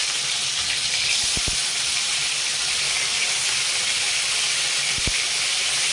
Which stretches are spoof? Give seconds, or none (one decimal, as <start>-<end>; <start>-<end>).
2.2-5.9